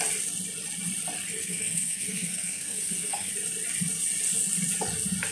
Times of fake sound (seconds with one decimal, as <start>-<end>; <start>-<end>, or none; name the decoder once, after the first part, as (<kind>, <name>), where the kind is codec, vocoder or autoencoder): 1.4-3.3 (codec, SNAC)